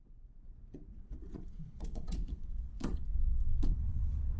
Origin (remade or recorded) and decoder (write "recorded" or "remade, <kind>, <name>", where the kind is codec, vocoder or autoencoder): remade, vocoder, Vocos